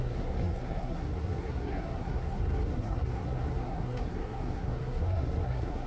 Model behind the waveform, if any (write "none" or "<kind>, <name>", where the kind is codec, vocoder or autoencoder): codec, SNAC